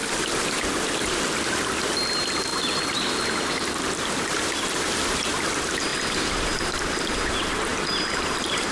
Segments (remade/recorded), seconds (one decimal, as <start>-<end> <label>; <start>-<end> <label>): 0.0-2.5 recorded; 2.5-3.6 remade; 3.6-7.7 recorded; 7.7-8.7 remade